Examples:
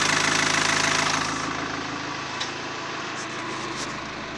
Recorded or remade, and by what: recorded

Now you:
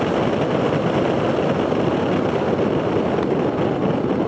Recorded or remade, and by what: recorded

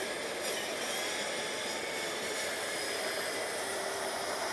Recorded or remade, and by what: remade, vocoder, BigVGAN v2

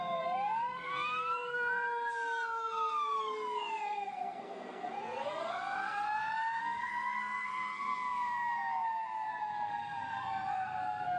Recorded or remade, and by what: remade, codec, SNAC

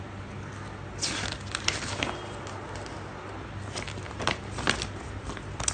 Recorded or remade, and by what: recorded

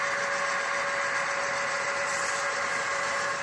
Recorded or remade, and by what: recorded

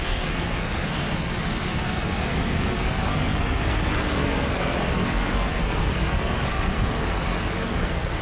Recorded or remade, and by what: remade, codec, SNAC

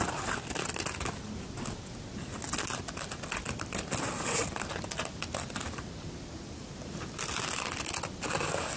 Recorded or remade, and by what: recorded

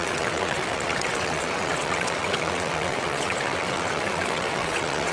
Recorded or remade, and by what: remade, vocoder, WaveNeXt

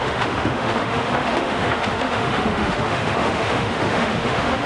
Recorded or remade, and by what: remade, autoencoder, DAC-VAE